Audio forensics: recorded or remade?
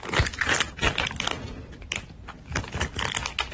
recorded